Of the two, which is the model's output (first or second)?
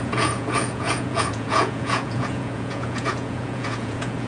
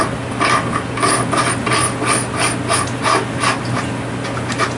first